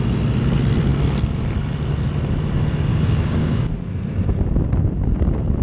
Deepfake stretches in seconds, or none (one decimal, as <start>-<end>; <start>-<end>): 2.9-3.7